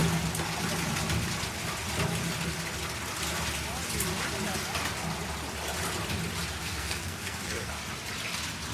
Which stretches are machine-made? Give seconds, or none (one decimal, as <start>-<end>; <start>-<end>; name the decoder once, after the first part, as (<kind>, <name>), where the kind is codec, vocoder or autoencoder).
6.6-7.7 (codec, SNAC)